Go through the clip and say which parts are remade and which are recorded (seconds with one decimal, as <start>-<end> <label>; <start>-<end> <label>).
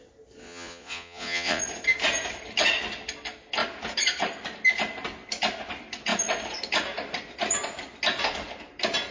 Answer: 0.0-0.4 recorded; 0.4-1.6 remade; 1.6-9.1 recorded